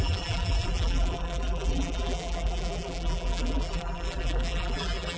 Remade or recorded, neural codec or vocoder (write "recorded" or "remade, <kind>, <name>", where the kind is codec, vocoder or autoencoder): remade, vocoder, BigVGAN v2